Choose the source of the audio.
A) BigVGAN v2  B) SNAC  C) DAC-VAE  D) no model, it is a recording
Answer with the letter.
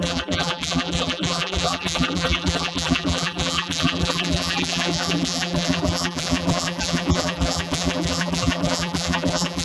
A